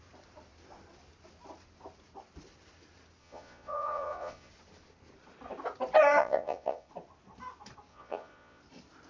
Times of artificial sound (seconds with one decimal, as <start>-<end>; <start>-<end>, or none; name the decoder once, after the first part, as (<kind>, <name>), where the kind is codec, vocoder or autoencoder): 3.2-4.5 (vocoder, Vocos); 6.2-6.9; 7.9-8.6